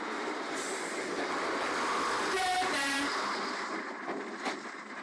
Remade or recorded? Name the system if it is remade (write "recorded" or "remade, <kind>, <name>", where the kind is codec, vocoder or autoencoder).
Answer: recorded